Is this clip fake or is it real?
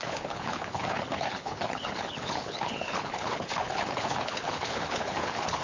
fake